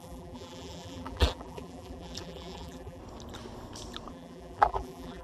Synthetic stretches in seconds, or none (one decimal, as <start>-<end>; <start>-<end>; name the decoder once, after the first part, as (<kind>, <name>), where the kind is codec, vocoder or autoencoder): 0.0-3.0 (vocoder, BigVGAN v2); 4.1-5.2